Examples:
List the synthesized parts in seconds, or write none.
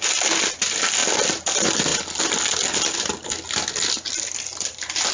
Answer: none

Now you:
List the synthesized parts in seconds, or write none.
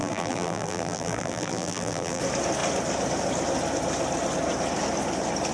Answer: 0.0-2.2 (vocoder, BigVGAN v2)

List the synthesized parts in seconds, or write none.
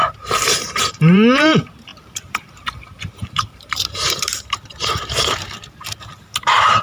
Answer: 0.0-6.8 (vocoder, BigVGAN v2)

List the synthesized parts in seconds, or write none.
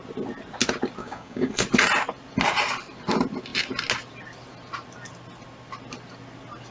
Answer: 1.0-1.6 (codec, DAC)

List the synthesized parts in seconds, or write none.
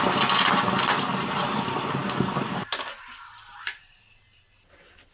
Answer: none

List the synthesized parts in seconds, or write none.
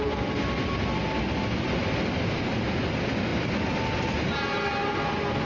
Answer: 1.8-2.8 (vocoder, BigVGAN v2)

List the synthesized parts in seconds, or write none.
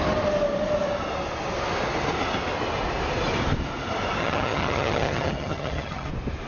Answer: 4.2-6.1 (vocoder, HiFi-GAN)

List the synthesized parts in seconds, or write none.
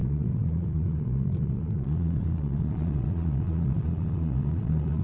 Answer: 0.0-5.0 (vocoder, Vocos)